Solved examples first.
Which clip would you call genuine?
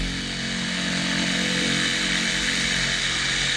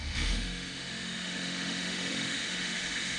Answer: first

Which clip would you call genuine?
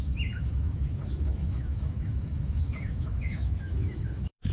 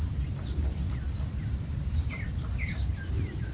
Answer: second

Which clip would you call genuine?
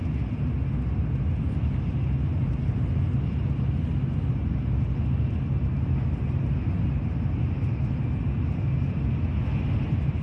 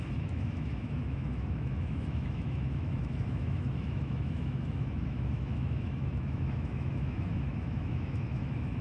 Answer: first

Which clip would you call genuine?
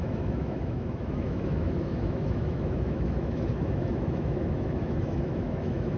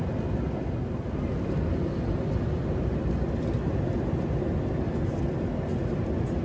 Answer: second